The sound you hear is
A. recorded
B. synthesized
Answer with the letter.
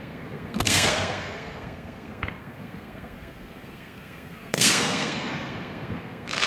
B